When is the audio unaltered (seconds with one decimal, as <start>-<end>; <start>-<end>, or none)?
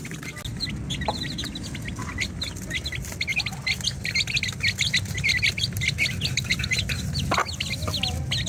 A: 0.0-0.5; 1.9-3.3; 6.5-8.5